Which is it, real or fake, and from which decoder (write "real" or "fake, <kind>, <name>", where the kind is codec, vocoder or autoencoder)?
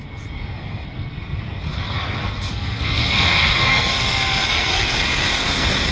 fake, codec, SNAC